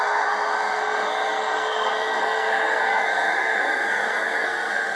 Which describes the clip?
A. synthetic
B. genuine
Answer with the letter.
A